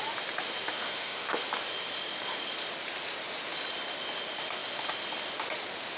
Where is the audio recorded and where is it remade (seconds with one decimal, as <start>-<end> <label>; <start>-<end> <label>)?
0.0-0.7 recorded; 0.7-1.4 remade; 1.4-6.0 recorded